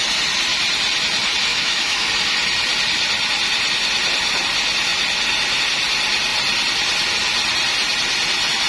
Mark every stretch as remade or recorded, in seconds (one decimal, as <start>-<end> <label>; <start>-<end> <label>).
0.0-1.5 recorded; 1.5-2.1 remade; 2.1-8.7 recorded